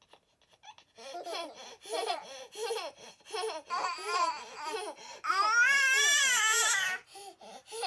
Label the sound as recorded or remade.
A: recorded